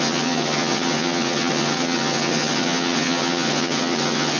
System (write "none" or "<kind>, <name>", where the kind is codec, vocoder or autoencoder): vocoder, HiFi-GAN